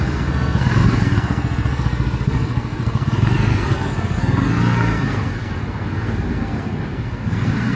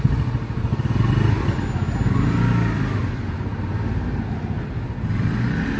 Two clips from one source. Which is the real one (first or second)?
second